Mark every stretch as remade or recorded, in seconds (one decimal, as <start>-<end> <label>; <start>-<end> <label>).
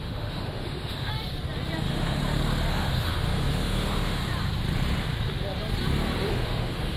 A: 0.0-1.1 remade; 1.1-1.8 recorded; 1.8-2.2 remade; 2.2-2.7 recorded; 2.7-4.2 remade; 4.2-6.3 recorded; 6.3-7.0 remade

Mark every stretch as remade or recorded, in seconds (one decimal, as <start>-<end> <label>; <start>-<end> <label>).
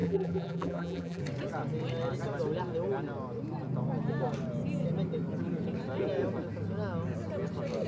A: 0.0-1.2 remade; 1.2-7.9 recorded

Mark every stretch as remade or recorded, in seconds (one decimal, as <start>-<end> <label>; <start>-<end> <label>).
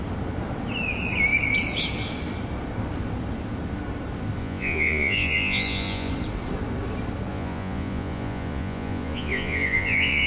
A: 0.0-4.4 recorded; 4.4-6.1 remade; 6.1-7.3 recorded; 7.3-10.3 remade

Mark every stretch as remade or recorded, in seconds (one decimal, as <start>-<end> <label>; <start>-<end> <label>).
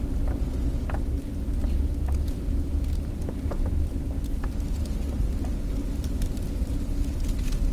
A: 0.0-7.7 recorded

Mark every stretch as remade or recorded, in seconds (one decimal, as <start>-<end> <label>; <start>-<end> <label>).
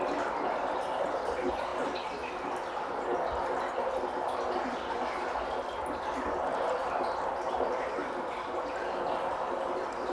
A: 0.0-10.1 recorded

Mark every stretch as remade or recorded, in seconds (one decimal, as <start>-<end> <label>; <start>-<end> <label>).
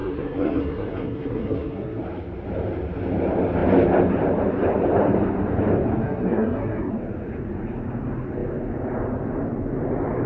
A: 0.0-2.0 remade; 2.0-6.0 recorded; 6.0-6.9 remade; 6.9-10.3 recorded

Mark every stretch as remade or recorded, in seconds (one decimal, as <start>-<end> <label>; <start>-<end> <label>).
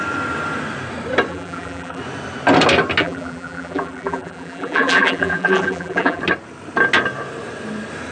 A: 0.0-1.3 recorded; 1.3-2.0 remade; 2.0-3.0 recorded; 3.0-6.2 remade; 6.2-8.1 recorded